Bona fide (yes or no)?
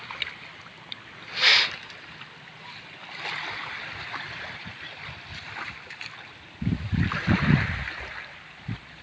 yes